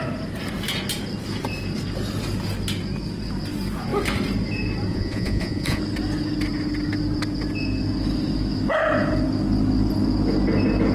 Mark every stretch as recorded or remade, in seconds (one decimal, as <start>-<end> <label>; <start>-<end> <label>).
0.0-4.9 recorded; 4.9-5.8 remade; 5.8-10.9 recorded